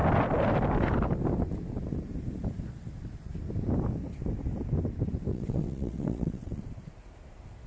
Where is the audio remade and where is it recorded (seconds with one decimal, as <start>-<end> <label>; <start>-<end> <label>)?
0.0-5.3 recorded; 5.3-6.6 remade; 6.6-7.7 recorded